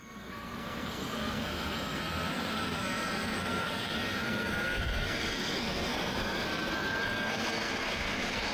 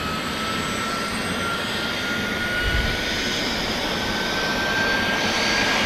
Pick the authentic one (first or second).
second